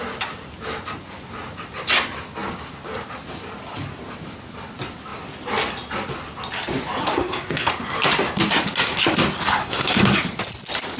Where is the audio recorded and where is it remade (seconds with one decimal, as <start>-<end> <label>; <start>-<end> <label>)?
0.0-7.0 recorded; 7.0-7.7 remade; 7.7-9.6 recorded; 9.6-10.1 remade; 10.1-11.0 recorded